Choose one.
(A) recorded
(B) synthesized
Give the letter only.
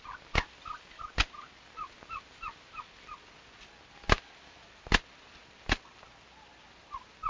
A